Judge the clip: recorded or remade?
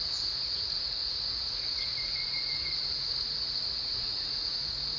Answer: remade